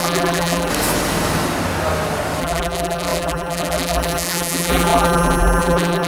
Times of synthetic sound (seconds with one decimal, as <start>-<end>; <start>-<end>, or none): 0.0-0.7; 2.4-6.1